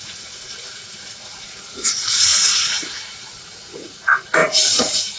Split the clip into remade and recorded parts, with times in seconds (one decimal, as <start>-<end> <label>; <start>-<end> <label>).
0.0-5.2 remade